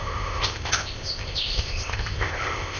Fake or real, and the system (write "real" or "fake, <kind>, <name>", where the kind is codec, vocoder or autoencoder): fake, codec, ZipCodec